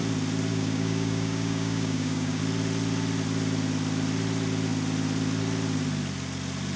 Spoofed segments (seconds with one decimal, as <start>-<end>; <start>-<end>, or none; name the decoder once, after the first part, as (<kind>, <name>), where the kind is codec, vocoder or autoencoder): 0.5-2.4 (codec, DAC)